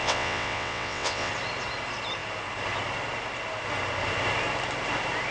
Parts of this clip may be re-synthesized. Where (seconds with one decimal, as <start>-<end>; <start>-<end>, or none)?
0.0-1.3